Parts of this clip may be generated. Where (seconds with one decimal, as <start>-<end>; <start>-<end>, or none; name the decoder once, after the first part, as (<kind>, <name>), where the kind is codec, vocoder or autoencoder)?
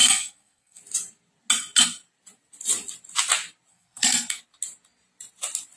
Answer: 0.0-0.8 (codec, SNAC); 3.7-4.4